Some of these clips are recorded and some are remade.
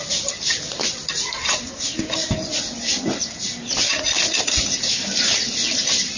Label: recorded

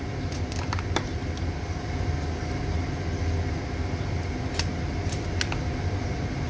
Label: recorded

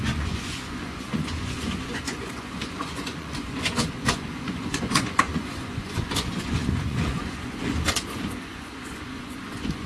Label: remade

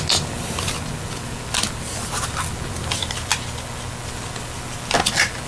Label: recorded